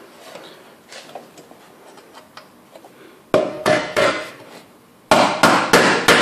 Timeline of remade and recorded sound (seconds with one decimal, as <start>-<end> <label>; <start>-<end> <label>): 0.0-3.5 recorded; 3.5-4.3 remade; 4.3-6.2 recorded